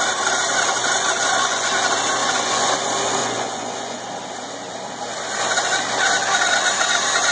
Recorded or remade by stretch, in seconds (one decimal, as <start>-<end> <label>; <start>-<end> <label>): 0.0-0.8 recorded; 0.8-1.7 remade; 1.7-2.2 recorded; 2.2-2.7 remade; 2.7-3.2 recorded; 3.2-4.0 remade; 4.0-7.3 recorded